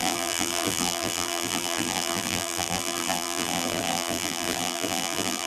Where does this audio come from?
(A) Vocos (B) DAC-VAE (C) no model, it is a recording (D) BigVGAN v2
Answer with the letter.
D